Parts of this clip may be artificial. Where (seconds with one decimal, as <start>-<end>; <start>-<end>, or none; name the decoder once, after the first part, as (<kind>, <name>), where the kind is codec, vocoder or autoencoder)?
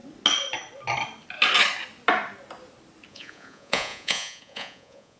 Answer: 3.1-5.2 (vocoder, Vocos)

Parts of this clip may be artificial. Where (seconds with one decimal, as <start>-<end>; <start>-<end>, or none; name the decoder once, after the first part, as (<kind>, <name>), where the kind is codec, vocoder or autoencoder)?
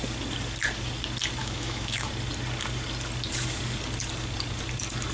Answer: 1.4-2.1 (autoencoder, DAC-VAE)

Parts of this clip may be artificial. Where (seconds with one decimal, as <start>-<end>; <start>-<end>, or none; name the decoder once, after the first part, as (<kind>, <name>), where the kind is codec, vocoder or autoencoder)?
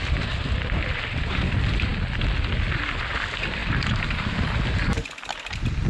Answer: none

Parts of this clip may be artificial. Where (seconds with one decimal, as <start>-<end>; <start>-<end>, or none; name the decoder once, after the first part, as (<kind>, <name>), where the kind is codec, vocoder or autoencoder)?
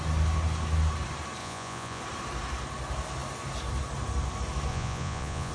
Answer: 1.4-2.0 (vocoder, Vocos); 4.7-5.5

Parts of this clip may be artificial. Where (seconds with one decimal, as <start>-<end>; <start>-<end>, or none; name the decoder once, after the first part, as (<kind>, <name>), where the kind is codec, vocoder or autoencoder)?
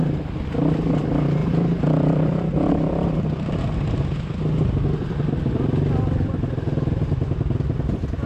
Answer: 1.4-3.6 (vocoder, BigVGAN v2)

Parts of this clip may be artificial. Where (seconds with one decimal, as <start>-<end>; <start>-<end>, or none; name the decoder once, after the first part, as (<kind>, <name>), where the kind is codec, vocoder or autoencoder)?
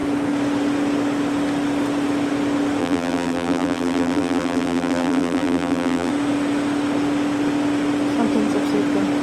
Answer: 2.8-6.1 (vocoder, BigVGAN v2)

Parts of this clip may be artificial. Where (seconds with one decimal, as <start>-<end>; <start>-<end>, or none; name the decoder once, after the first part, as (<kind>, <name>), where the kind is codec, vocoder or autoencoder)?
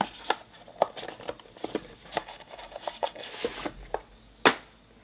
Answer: 2.2-3.3 (codec, DAC)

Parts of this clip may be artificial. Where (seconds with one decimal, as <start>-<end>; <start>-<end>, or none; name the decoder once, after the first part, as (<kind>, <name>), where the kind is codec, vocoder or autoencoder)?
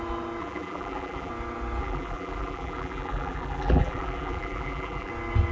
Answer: 0.4-1.3 (vocoder, BigVGAN v2); 1.8-5.1